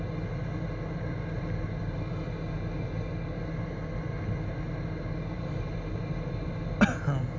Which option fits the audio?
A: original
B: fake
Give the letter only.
A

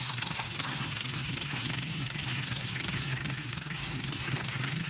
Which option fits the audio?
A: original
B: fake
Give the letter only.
B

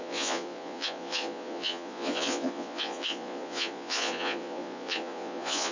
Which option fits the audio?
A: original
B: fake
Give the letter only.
B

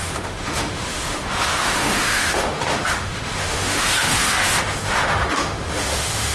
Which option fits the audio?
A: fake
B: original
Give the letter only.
A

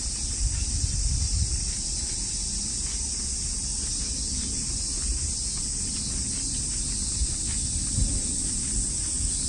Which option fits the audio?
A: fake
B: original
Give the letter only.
B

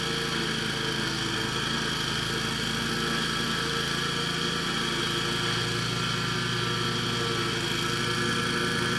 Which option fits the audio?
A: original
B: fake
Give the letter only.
A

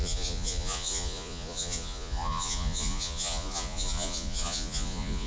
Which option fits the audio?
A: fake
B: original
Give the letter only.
A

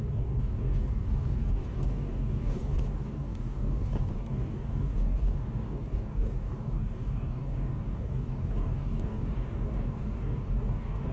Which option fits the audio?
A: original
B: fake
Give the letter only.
B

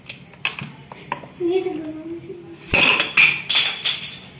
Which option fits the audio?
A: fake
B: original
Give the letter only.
B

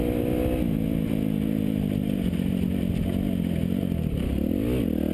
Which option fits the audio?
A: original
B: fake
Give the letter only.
A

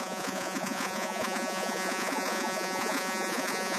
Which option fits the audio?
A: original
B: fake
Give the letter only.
B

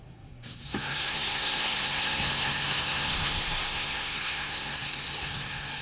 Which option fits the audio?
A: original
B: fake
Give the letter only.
B